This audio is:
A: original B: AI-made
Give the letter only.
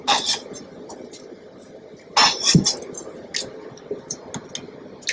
A